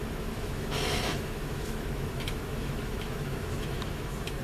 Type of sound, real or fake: fake